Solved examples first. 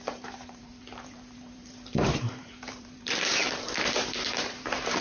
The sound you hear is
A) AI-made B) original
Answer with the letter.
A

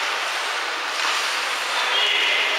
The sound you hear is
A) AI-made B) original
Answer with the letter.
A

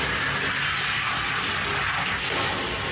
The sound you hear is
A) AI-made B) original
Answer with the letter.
B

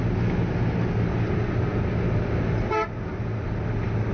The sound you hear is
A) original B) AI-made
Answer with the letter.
A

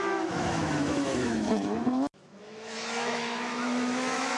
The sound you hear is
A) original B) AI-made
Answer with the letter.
B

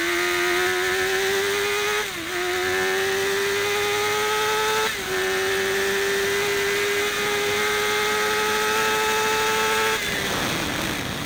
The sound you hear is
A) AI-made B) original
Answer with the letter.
B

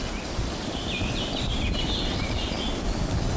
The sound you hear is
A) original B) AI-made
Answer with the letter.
A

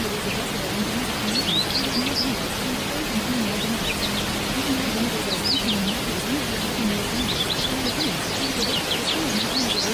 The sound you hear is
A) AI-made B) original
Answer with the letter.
B